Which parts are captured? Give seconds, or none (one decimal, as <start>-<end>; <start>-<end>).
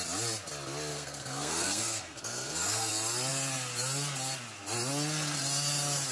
0.0-0.9; 2.9-6.1